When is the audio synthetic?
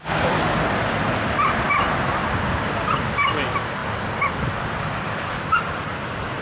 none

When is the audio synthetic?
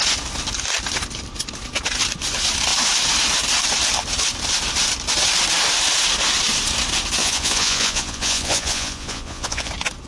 7.2-9.7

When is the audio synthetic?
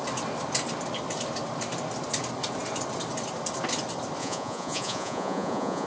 4.2-5.9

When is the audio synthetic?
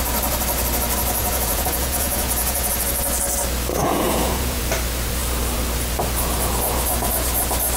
1.2-2.7; 3.8-4.6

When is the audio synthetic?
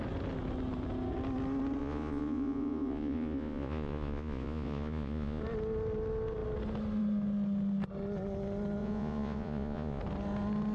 1.8-5.4; 8.8-10.0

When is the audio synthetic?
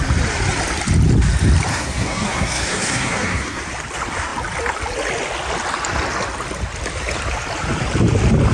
1.7-3.6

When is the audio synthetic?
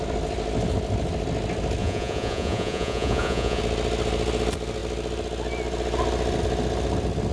1.8-3.6